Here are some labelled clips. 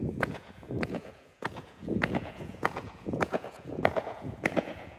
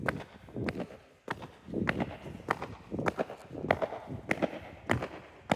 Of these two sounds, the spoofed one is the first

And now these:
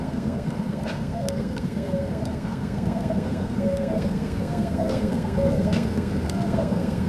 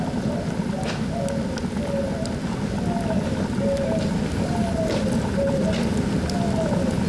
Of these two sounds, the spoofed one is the first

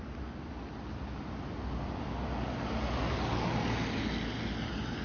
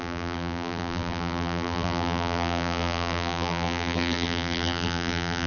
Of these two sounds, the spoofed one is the second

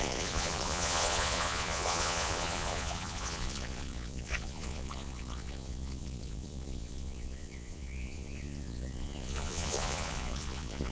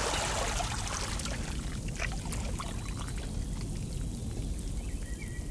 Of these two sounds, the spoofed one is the first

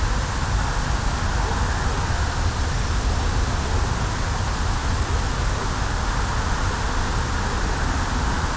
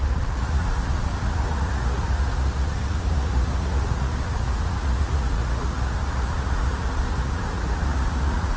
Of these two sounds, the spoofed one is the second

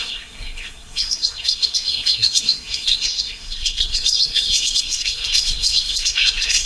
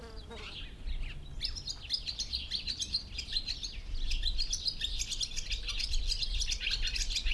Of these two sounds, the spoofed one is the first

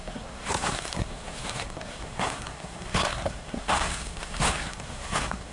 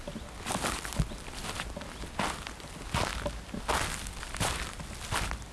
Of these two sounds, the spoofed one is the first